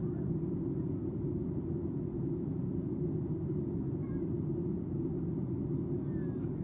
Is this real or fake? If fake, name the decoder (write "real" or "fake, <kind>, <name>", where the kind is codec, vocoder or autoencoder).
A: real